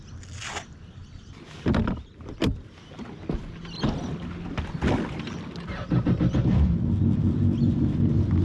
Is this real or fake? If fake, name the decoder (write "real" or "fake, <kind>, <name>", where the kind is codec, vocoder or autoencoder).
real